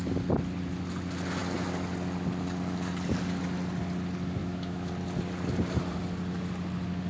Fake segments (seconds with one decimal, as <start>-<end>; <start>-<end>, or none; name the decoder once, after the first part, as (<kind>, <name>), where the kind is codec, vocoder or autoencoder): 4.4-4.9 (autoencoder, DAC-VAE)